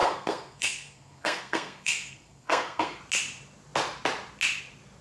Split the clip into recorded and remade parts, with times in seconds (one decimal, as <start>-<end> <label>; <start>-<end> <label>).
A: 0.0-3.0 remade; 3.0-5.0 recorded